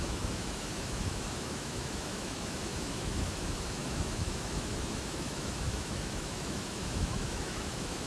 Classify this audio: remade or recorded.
remade